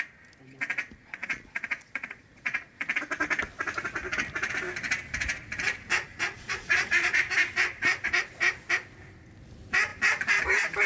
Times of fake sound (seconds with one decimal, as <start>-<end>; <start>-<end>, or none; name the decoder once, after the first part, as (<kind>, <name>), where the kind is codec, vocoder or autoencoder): 1.2-2.7 (vocoder, Vocos); 6.1-7.2